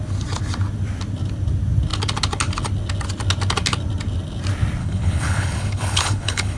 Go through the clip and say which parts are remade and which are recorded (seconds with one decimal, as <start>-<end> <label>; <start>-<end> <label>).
0.0-4.8 recorded; 4.8-6.6 remade